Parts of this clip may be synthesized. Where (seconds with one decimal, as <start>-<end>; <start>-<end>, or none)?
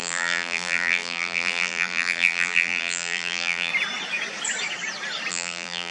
0.0-3.7; 5.3-5.9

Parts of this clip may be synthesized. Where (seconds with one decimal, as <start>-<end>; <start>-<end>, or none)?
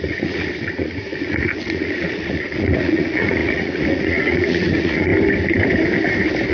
0.0-5.1